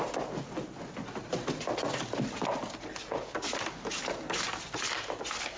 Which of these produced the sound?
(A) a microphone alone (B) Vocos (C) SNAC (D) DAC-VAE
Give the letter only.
A